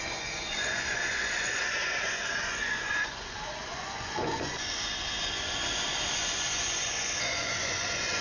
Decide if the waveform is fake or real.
fake